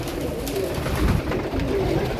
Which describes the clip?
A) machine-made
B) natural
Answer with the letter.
B